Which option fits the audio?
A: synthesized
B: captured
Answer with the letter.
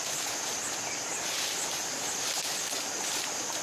B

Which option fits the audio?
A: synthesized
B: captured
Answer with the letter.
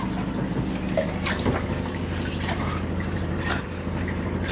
A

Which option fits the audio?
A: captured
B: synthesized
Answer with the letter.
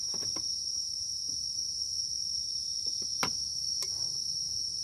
B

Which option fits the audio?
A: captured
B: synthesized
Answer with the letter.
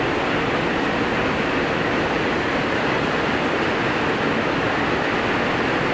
A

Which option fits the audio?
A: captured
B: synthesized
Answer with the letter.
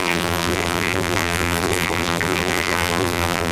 B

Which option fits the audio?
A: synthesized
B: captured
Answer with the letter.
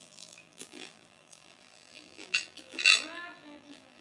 A